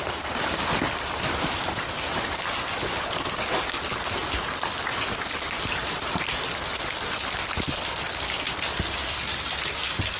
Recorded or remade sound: recorded